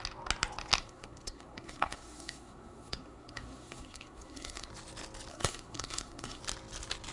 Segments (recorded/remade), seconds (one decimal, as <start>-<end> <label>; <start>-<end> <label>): 0.0-0.8 recorded; 0.8-4.7 remade; 4.7-5.3 recorded; 5.3-6.4 remade; 6.4-7.1 recorded